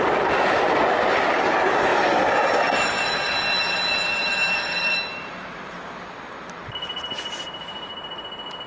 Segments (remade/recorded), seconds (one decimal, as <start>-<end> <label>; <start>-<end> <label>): 0.0-1.9 recorded; 1.9-6.0 remade; 6.0-6.6 recorded; 6.6-8.2 remade; 8.2-8.7 recorded